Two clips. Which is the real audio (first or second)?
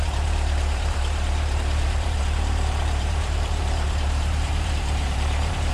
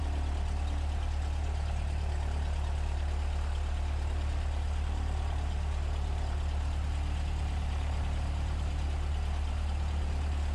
second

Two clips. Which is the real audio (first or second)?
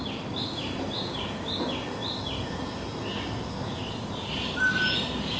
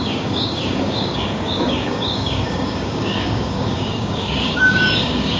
first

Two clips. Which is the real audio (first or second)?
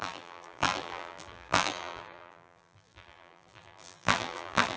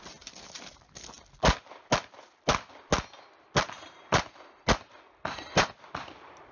second